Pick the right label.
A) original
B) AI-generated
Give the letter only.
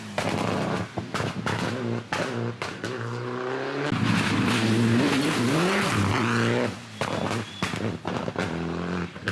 A